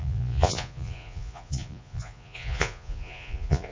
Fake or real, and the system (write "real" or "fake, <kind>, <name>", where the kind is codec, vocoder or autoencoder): fake, vocoder, Vocos